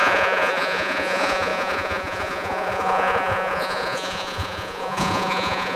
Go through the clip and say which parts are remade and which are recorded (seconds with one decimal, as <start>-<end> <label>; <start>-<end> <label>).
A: 0.0-5.8 remade